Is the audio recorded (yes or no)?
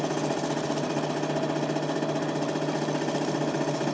yes